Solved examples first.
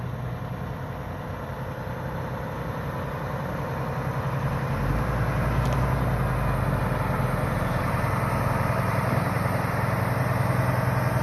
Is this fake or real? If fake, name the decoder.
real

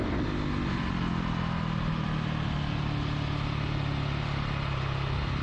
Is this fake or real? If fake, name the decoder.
real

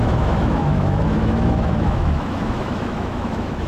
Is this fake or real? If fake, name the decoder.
fake, autoencoder, DAC-VAE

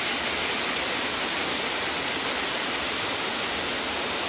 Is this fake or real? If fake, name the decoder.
real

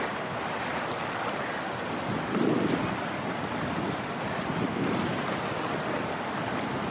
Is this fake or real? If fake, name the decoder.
real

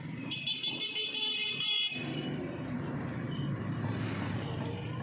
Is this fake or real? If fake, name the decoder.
fake, vocoder, BigVGAN v2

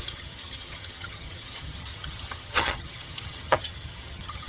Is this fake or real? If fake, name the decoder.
fake, vocoder, HiFi-GAN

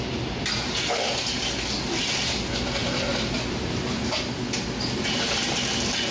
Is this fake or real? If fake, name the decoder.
real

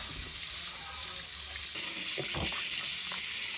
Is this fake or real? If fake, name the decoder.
real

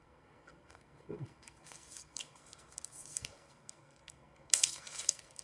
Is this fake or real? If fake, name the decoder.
fake, codec, SNAC